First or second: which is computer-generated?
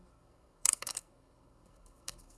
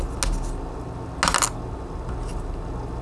first